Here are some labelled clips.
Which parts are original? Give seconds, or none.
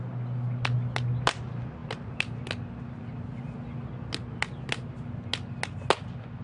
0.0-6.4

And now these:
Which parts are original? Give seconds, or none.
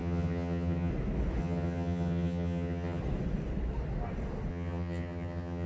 0.9-1.4; 3.0-4.5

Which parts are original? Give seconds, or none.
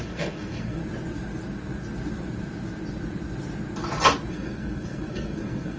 0.8-4.3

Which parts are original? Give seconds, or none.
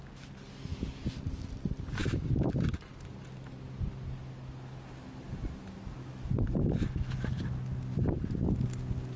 0.0-2.0; 2.6-9.2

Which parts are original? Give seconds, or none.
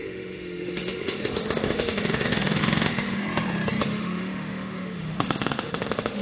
3.2-3.8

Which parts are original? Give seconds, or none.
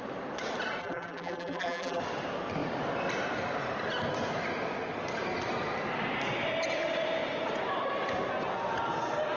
0.0-0.8; 2.0-9.4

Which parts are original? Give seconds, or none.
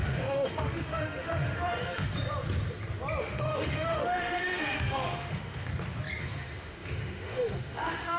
2.1-3.2; 5.7-6.2